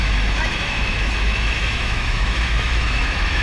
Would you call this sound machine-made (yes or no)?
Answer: yes